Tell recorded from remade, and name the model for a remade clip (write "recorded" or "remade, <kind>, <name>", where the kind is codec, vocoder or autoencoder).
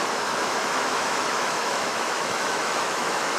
remade, autoencoder, DAC-VAE